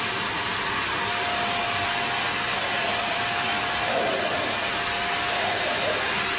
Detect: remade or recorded recorded